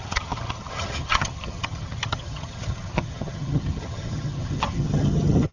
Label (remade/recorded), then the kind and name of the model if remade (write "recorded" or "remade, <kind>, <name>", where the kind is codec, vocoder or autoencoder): remade, vocoder, HiFi-GAN